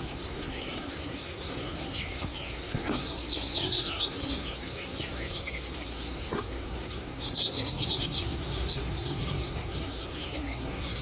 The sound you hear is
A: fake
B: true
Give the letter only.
A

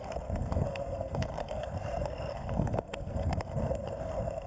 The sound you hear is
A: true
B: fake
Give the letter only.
B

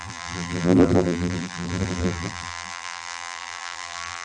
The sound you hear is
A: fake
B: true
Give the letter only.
A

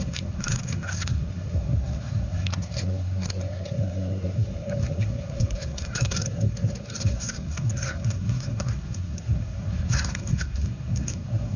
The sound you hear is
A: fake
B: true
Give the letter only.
A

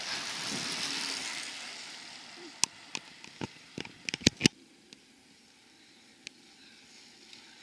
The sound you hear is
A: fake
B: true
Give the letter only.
B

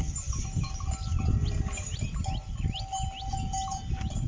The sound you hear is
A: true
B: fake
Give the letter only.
A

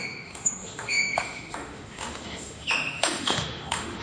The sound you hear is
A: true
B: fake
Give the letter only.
B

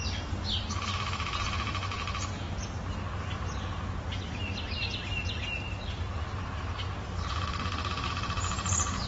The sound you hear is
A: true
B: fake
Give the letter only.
A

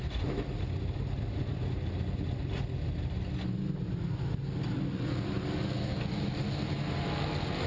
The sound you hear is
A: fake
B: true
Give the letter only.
B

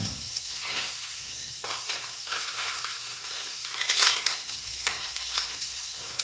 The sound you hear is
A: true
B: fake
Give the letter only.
B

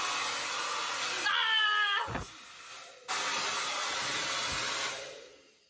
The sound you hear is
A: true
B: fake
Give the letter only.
A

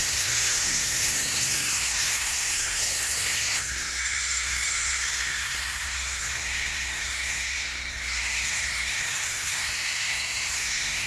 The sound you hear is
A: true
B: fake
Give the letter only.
B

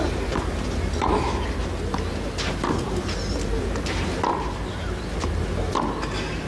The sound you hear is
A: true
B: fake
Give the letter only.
A